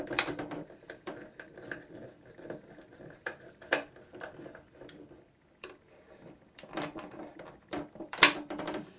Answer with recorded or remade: remade